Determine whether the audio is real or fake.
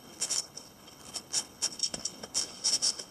fake